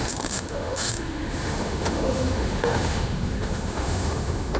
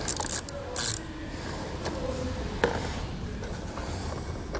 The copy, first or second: first